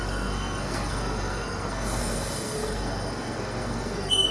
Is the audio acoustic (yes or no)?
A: no